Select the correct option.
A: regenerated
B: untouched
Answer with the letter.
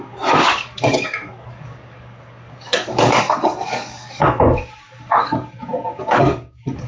A